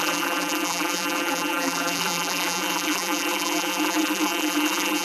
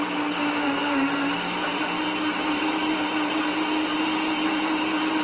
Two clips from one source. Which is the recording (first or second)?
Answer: second